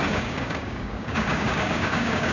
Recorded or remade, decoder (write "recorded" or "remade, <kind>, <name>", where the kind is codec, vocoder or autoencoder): remade, codec, DAC